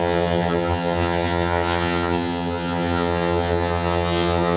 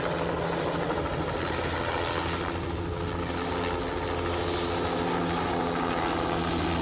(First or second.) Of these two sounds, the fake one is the first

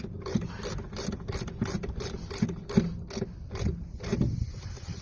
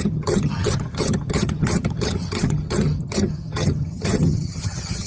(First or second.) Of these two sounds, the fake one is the second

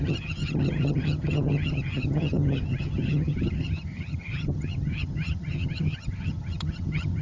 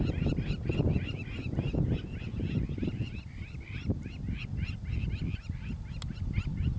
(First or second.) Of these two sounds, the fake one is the first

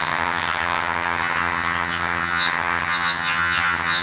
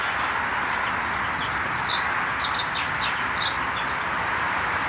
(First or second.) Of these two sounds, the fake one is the first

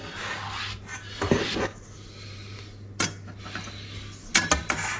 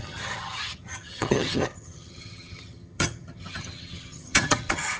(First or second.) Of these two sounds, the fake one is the second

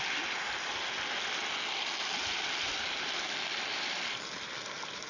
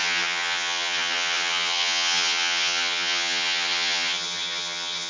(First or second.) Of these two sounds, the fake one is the second